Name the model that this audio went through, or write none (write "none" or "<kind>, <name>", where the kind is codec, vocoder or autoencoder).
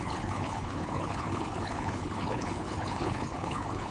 codec, HILCodec